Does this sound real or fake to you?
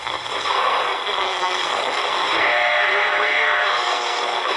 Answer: fake